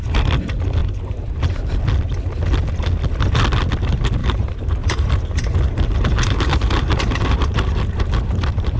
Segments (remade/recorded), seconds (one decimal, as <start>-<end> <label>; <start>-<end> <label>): 0.0-0.8 recorded; 0.8-1.4 remade; 1.4-4.2 recorded; 4.2-8.8 remade